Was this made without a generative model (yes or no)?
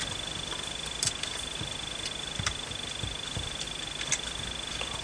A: yes